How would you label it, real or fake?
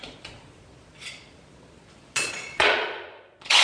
fake